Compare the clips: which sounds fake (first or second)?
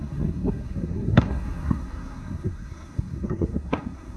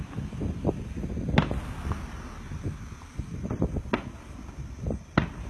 first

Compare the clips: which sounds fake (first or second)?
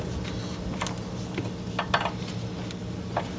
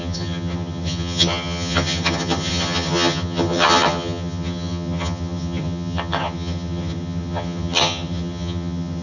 second